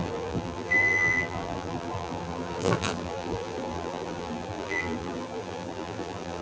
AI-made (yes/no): yes